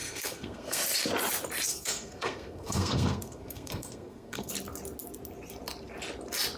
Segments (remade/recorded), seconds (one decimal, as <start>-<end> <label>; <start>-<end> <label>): 0.0-0.8 remade; 0.8-1.7 recorded; 1.7-4.5 remade; 4.5-6.6 recorded